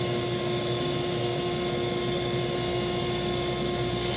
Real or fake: real